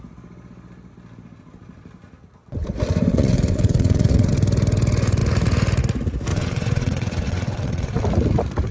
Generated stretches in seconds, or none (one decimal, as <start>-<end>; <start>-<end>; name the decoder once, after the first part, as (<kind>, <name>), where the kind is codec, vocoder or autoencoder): 3.1-4.3 (vocoder, WaveNeXt); 6.3-8.0